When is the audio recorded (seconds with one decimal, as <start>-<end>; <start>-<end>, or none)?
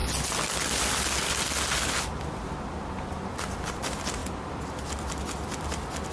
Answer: 0.0-6.1